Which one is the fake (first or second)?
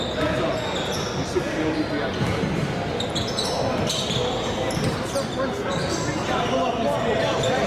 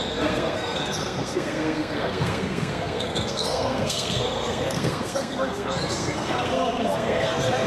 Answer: second